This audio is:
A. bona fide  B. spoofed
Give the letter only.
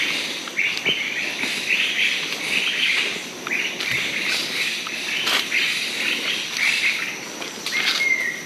A